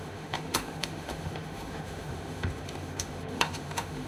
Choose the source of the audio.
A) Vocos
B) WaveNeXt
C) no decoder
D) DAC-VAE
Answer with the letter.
D